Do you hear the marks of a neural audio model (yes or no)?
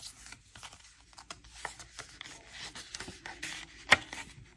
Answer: no